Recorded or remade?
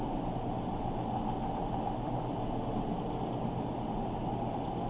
recorded